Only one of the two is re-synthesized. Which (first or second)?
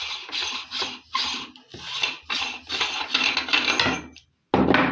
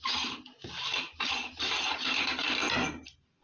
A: second